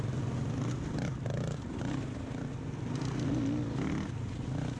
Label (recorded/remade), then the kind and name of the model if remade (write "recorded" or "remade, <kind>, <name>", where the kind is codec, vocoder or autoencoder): recorded